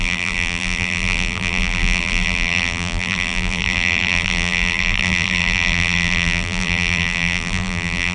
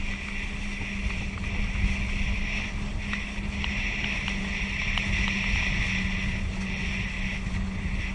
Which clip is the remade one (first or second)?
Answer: first